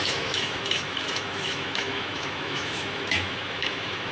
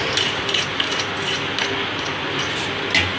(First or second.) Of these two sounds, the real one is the second